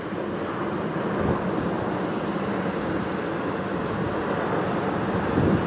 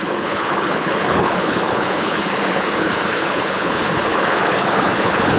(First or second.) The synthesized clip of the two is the second